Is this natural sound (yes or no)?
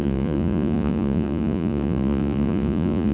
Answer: no